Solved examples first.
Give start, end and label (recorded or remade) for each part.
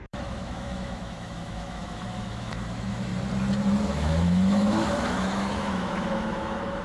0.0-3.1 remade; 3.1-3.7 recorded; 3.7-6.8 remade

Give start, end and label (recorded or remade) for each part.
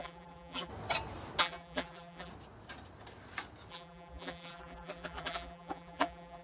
0.0-0.7 remade; 0.7-1.4 recorded; 1.4-2.3 remade; 2.3-3.7 recorded; 3.7-6.4 remade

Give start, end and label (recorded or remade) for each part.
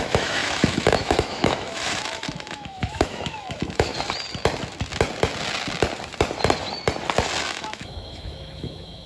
0.0-3.9 remade; 3.9-7.5 recorded; 7.5-9.1 remade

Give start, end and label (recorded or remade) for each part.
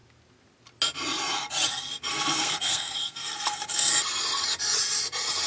0.0-2.1 recorded; 2.1-3.9 remade; 3.9-5.5 recorded